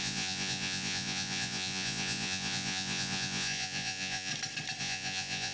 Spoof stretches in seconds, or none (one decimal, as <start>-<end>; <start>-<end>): 0.0-4.3; 4.8-5.5